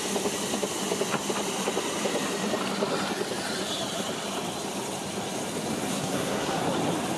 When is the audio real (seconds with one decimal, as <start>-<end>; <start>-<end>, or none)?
0.0-5.9; 6.6-7.2